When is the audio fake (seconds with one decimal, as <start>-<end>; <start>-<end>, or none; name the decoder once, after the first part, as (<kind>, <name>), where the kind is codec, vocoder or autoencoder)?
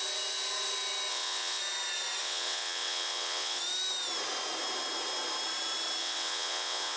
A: 1.1-1.6 (vocoder, WaveNeXt); 2.2-3.6; 6.0-7.0